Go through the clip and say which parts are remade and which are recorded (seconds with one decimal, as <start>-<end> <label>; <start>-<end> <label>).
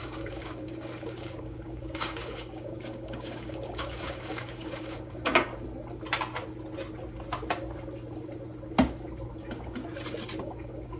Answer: 0.0-5.3 remade; 5.3-9.4 recorded; 9.4-9.8 remade; 9.8-10.4 recorded; 10.4-11.0 remade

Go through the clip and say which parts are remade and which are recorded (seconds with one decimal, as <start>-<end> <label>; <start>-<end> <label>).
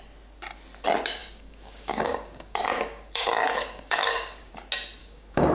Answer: 0.0-1.2 recorded; 1.2-4.5 remade; 4.5-5.0 recorded; 5.0-5.5 remade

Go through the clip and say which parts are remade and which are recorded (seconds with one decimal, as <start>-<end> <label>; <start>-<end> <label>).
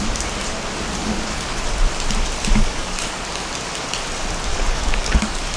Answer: 0.0-1.0 recorded; 1.0-1.6 remade; 1.6-2.6 recorded; 2.6-3.4 remade; 3.4-4.5 recorded; 4.5-5.6 remade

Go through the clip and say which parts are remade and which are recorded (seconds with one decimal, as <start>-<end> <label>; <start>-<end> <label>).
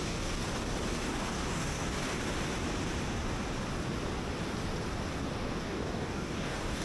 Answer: 0.0-0.4 remade; 0.4-1.0 recorded; 1.0-2.0 remade; 2.0-5.5 recorded; 5.5-6.8 remade